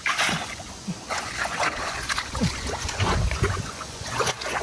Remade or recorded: remade